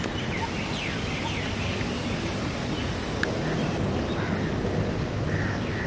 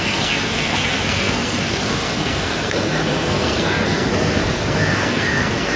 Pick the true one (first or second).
first